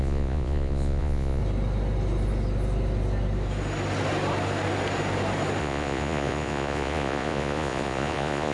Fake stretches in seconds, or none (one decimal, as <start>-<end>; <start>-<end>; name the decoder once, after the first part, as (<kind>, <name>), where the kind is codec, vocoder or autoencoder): 0.0-1.4 (vocoder, Vocos); 5.6-8.5